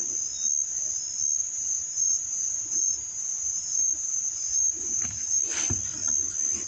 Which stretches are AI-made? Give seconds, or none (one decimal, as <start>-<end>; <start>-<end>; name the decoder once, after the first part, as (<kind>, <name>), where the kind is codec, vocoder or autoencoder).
1.4-5.4 (vocoder, BigVGAN v2)

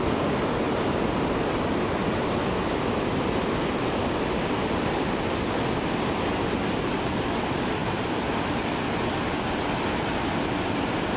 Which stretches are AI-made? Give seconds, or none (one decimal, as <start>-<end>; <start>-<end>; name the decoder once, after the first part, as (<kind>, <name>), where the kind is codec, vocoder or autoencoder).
7.8-8.7 (vocoder, BigVGAN v2)

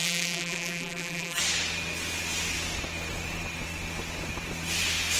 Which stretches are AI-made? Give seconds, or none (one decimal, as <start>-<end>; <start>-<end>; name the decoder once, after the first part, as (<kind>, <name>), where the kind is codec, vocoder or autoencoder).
0.0-1.4 (vocoder, BigVGAN v2)

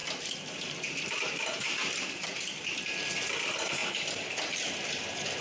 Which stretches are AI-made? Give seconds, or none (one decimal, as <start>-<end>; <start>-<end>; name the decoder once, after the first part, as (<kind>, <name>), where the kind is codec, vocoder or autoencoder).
0.0-2.8 (vocoder, BigVGAN v2); 3.8-5.4

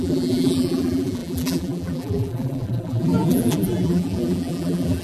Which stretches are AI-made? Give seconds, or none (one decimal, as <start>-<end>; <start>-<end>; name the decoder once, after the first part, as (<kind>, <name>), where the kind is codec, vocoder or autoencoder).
0.0-5.0 (vocoder, BigVGAN v2)

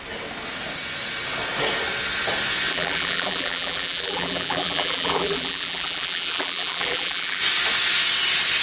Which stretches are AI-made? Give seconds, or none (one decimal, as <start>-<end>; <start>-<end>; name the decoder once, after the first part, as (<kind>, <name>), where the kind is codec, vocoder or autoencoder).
2.7-7.4 (vocoder, BigVGAN v2)

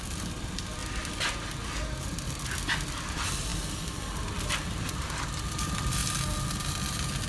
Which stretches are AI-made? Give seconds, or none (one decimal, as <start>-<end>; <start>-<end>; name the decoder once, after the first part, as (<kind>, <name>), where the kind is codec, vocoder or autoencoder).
0.0-0.8 (vocoder, BigVGAN v2); 2.8-6.0; 6.5-7.3